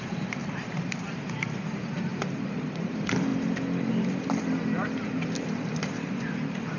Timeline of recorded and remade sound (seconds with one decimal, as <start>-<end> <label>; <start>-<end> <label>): 0.0-2.1 remade; 2.1-2.8 recorded; 2.8-3.3 remade; 3.3-3.9 recorded; 3.9-6.8 remade